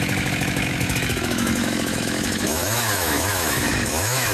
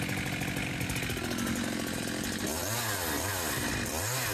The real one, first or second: second